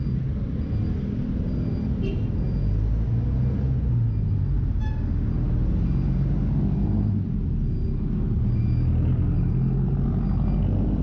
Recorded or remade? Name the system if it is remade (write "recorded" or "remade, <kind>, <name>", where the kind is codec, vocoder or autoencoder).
recorded